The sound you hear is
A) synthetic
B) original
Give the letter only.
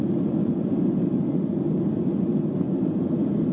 B